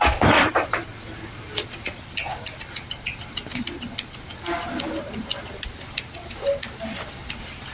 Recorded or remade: recorded